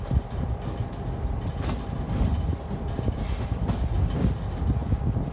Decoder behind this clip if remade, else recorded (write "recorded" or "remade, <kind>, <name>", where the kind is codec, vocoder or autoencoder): recorded